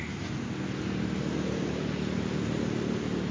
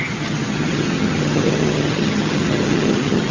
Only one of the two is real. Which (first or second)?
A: first